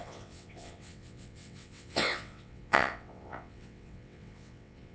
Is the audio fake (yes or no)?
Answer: yes